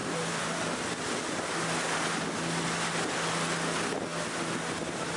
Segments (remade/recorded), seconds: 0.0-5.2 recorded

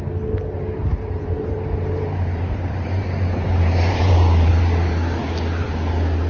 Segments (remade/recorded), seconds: 0.0-0.8 recorded; 0.8-4.5 remade; 4.5-6.3 recorded

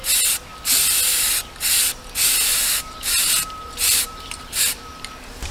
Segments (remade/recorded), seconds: 0.0-2.5 recorded; 2.5-5.1 remade; 5.1-5.5 recorded